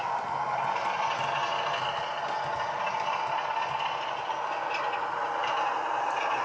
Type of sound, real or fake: real